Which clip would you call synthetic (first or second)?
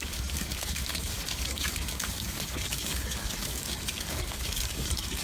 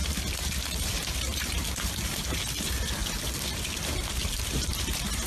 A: first